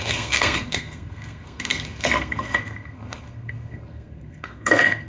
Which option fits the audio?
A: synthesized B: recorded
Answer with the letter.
A